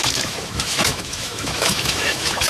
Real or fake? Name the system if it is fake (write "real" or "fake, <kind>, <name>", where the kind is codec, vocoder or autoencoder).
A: fake, autoencoder, DAC-VAE